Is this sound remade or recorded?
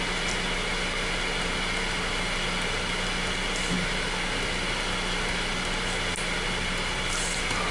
recorded